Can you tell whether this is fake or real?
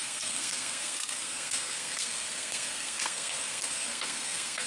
fake